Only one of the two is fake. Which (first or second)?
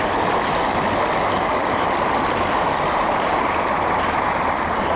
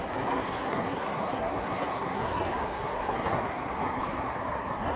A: second